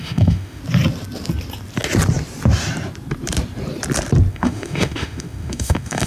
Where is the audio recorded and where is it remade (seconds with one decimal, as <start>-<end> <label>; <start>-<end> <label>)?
0.0-0.6 remade; 0.6-4.3 recorded; 4.3-6.1 remade

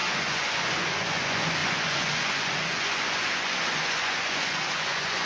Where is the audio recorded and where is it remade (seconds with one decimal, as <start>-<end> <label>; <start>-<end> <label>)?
0.0-5.3 remade

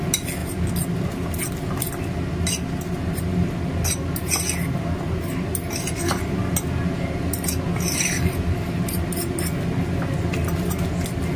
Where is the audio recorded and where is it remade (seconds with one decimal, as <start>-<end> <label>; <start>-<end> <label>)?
0.0-11.4 recorded

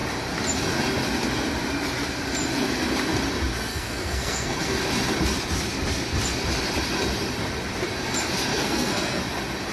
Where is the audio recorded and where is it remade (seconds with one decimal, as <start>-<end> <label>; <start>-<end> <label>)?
0.0-3.7 recorded; 3.7-4.8 remade; 4.8-8.5 recorded; 8.5-9.2 remade; 9.2-9.7 recorded

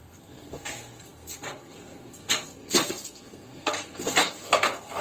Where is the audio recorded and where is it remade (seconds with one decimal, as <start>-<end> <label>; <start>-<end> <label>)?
0.0-5.0 remade

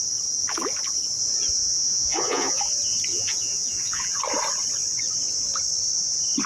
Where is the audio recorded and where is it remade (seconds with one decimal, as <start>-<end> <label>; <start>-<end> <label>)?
0.0-1.6 recorded; 1.6-2.6 remade; 2.6-3.1 recorded; 3.1-4.2 remade; 4.2-6.5 recorded

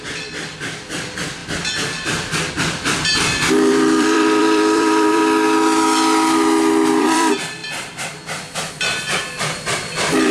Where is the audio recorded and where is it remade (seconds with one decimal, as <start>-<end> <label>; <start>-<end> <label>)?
0.0-1.4 remade; 1.4-2.5 recorded; 2.5-3.1 remade; 3.1-3.7 recorded; 3.7-5.2 remade; 5.2-6.9 recorded; 6.9-7.6 remade; 7.6-8.7 recorded; 8.7-10.3 remade